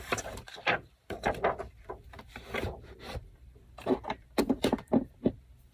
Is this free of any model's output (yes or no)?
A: no